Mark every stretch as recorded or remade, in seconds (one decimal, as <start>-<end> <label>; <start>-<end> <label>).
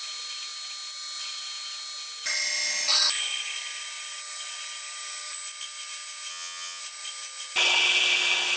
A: 0.0-6.3 recorded; 6.3-6.8 remade; 6.8-8.6 recorded